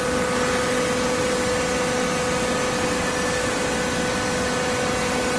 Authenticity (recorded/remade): recorded